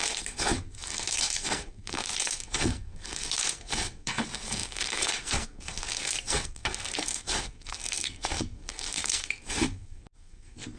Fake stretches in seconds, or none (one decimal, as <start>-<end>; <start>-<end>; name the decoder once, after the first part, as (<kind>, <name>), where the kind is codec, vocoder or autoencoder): 0.0-10.8 (codec, SNAC)